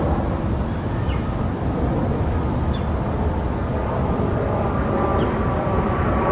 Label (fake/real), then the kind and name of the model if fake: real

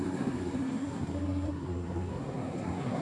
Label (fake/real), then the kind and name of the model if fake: fake, codec, SNAC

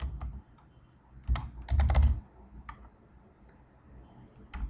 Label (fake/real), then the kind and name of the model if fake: real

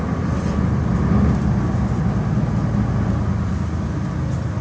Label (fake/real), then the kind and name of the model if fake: real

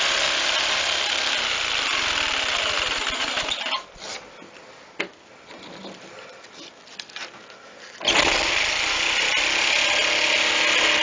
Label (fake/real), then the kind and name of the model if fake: real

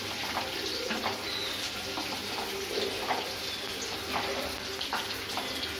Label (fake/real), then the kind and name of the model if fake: real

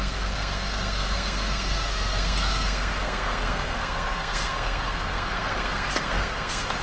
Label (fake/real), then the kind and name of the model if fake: fake, codec, SNAC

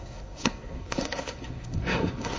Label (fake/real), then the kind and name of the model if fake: fake, codec, SNAC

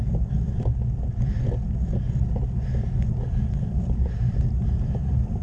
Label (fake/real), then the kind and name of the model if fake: real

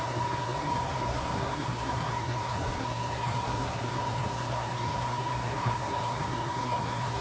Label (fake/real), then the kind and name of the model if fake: fake, codec, SNAC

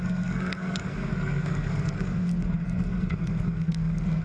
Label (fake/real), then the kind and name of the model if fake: fake, codec, SNAC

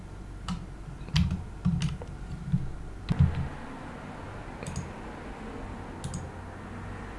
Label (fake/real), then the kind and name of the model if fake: real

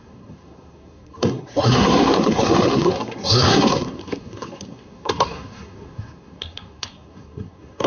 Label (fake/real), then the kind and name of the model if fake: fake, codec, SNAC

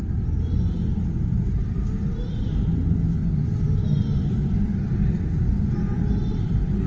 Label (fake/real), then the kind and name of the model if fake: real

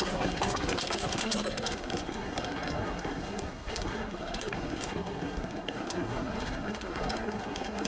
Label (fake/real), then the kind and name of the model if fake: fake, codec, SNAC